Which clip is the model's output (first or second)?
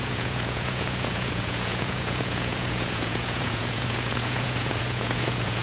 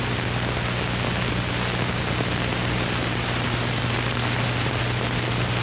first